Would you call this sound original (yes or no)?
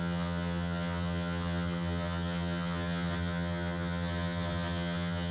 no